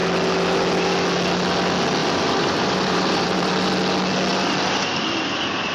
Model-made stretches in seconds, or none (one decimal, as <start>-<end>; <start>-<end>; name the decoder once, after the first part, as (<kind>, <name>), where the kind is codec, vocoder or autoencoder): 2.0-3.5 (vocoder, BigVGAN v2)